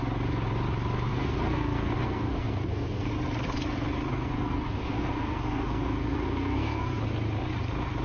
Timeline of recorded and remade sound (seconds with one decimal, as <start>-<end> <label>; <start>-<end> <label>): 0.0-1.1 recorded; 1.1-3.1 remade; 3.1-4.1 recorded; 4.1-7.0 remade; 7.0-8.0 recorded